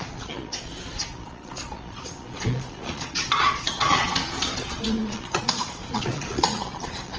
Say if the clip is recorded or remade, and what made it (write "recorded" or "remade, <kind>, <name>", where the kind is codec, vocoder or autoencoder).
remade, vocoder, Vocos